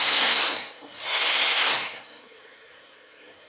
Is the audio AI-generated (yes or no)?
yes